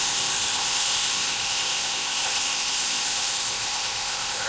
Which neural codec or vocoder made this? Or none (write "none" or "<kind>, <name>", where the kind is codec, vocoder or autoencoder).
codec, ZipCodec